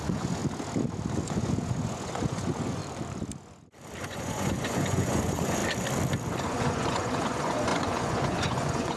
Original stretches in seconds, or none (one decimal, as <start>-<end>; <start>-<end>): 0.4-1.2; 2.8-4.0; 5.6-6.4